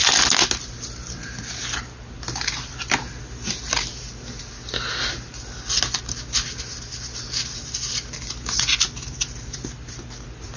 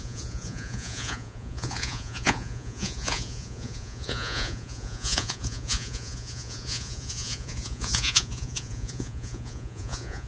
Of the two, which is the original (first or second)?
first